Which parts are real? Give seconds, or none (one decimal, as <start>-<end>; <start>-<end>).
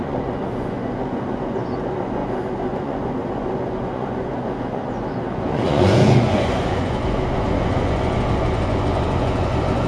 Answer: none